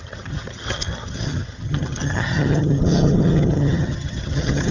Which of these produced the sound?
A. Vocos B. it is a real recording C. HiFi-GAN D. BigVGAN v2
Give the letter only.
C